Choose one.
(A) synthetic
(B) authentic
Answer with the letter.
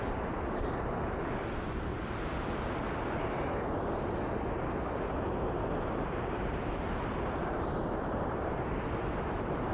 B